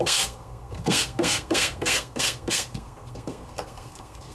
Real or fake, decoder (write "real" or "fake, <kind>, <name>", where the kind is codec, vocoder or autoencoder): fake, codec, SNAC